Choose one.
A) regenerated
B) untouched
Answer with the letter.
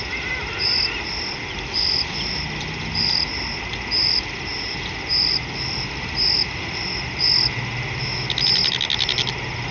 B